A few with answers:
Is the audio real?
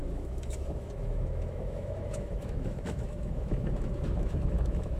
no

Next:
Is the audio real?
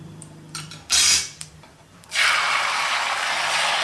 no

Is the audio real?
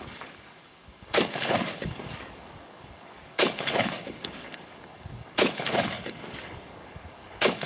no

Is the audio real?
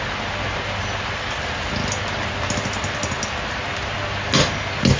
yes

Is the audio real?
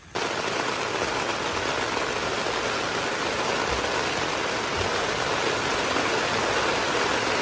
yes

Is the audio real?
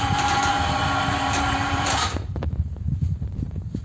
no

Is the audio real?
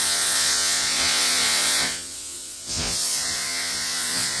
no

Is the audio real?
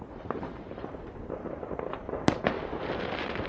no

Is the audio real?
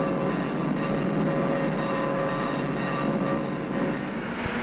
yes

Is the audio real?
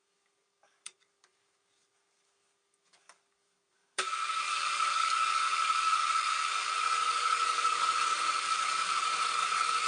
no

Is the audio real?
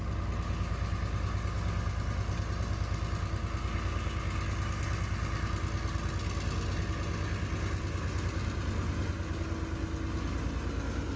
yes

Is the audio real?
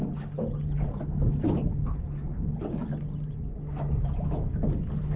yes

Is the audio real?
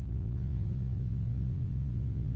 no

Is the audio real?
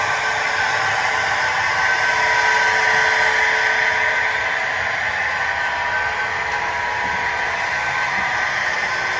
yes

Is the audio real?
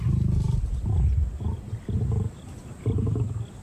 yes